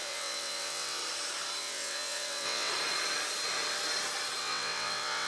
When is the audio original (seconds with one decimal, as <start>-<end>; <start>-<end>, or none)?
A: 1.0-1.6; 2.7-4.4